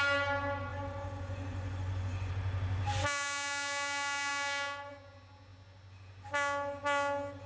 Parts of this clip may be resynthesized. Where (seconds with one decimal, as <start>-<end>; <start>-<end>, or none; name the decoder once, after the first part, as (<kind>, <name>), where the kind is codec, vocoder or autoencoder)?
0.7-2.3 (vocoder, Vocos)